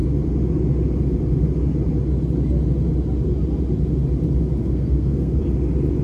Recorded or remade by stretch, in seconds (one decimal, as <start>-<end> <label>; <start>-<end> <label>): 0.0-4.6 recorded; 4.6-5.4 remade; 5.4-6.0 recorded